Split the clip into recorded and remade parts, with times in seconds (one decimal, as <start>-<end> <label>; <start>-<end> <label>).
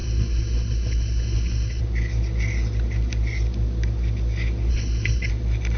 0.0-1.8 remade; 1.8-4.7 recorded; 4.7-5.3 remade; 5.3-5.8 recorded